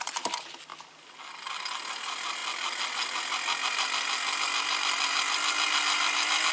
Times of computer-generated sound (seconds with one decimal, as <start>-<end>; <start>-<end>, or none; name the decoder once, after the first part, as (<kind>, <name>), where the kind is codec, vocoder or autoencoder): 0.0-0.7 (vocoder, BigVGAN v2); 1.9-2.4